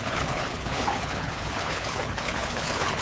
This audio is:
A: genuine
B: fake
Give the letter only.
B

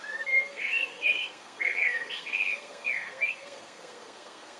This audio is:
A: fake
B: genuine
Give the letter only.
A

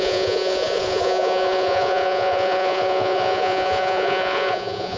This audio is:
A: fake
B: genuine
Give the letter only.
A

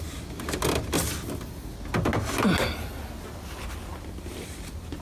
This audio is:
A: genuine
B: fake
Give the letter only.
A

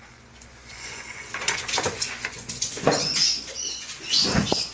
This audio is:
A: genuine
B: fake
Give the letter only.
B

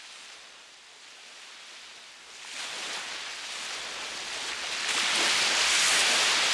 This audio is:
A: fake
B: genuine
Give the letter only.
B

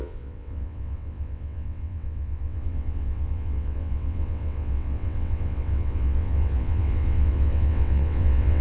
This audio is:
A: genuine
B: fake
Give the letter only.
B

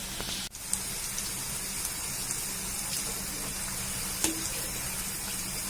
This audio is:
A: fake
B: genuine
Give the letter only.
B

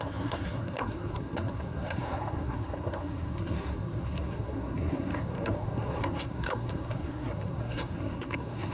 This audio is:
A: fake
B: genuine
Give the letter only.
A